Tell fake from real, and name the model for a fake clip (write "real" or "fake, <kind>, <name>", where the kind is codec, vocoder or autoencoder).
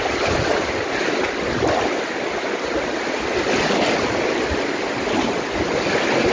real